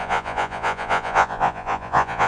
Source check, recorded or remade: remade